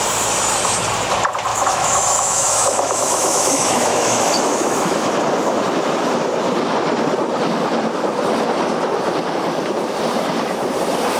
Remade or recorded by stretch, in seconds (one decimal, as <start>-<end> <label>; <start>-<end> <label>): 0.0-1.5 recorded; 1.5-5.1 remade; 5.1-11.2 recorded